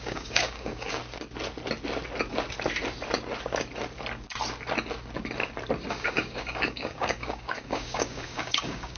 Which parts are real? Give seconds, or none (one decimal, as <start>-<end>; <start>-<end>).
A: 1.0-5.9